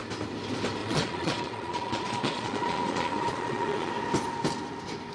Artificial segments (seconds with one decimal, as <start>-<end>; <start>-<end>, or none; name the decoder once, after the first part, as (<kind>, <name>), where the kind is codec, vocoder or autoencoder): 0.8-3.9 (vocoder, Vocos)